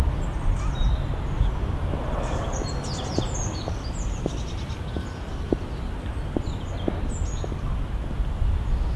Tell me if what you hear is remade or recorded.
recorded